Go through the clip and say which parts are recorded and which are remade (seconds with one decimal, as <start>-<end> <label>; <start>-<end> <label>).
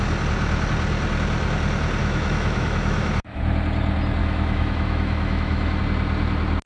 0.0-2.0 recorded; 2.0-3.4 remade; 3.4-4.2 recorded; 4.2-5.8 remade; 5.8-6.7 recorded